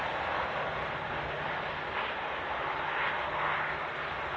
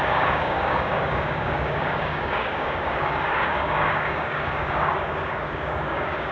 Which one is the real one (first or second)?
first